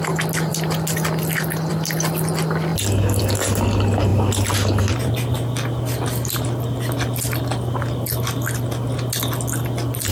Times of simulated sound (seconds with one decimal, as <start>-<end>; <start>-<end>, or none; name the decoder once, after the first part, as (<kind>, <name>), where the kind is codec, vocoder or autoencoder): none

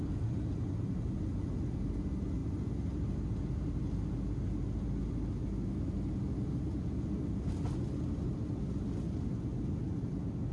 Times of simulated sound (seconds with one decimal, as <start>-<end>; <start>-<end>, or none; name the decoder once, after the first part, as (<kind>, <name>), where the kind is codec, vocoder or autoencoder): none

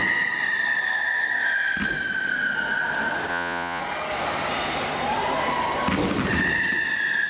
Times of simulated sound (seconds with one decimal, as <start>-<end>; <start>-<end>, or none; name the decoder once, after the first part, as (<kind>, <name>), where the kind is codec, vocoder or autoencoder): 3.3-3.8 (vocoder, Vocos)

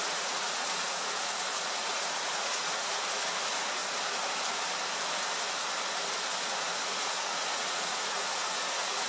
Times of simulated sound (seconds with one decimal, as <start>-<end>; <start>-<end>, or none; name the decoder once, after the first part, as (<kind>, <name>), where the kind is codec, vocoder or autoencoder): 0.0-3.8 (vocoder, Vocos); 6.5-9.1

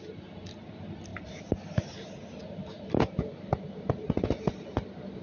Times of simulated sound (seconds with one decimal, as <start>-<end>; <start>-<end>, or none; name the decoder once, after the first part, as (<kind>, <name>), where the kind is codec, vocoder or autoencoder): none

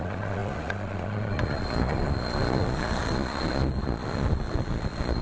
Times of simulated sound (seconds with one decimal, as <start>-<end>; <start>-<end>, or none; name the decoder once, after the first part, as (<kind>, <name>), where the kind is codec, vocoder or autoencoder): 0.0-5.2 (vocoder, Vocos)

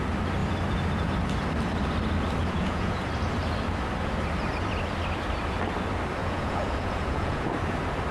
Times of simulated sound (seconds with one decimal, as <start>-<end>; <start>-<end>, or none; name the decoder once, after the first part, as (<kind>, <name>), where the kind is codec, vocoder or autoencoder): 2.4-3.0 (vocoder, Vocos); 6.2-7.5

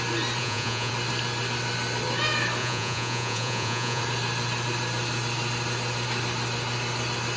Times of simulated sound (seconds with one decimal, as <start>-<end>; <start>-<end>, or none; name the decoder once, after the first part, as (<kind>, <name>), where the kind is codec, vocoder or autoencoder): 0.4-0.9 (vocoder, Vocos); 2.6-4.0